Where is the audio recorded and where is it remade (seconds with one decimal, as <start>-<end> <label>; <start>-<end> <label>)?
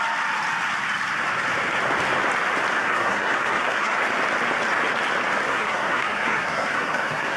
0.0-2.8 recorded; 2.8-4.0 remade; 4.0-5.5 recorded; 5.5-7.4 remade